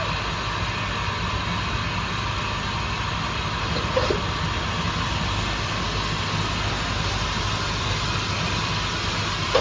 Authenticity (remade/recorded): recorded